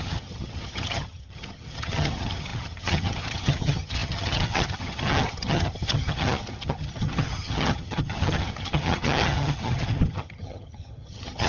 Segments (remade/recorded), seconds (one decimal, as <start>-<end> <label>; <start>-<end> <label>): 0.0-11.5 remade